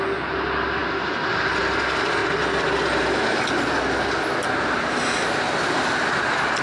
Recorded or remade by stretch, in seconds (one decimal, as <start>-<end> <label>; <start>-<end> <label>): 0.0-6.6 recorded